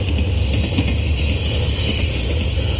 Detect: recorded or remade recorded